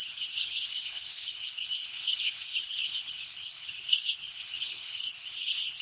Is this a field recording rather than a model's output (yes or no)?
no